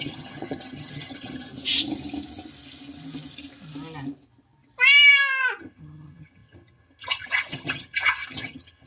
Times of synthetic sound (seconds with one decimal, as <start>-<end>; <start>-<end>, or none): 0.0-1.5; 5.6-8.9